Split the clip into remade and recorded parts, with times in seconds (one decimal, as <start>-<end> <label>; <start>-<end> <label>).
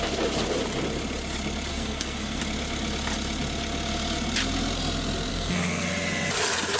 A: 0.0-1.7 recorded; 1.7-2.4 remade; 2.4-5.3 recorded; 5.3-5.9 remade; 5.9-6.8 recorded